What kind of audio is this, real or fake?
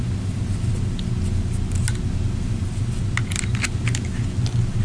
real